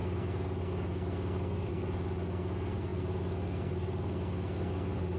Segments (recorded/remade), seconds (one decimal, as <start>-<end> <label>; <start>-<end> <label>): 0.0-5.2 remade